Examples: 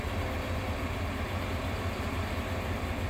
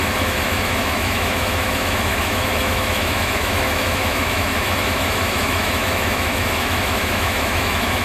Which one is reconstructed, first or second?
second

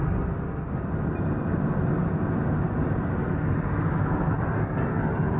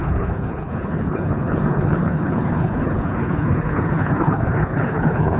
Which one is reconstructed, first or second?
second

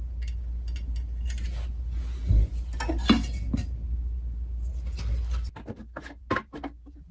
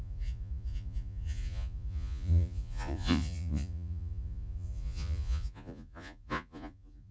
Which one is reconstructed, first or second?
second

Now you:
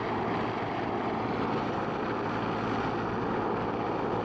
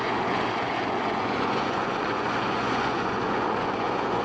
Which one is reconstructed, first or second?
second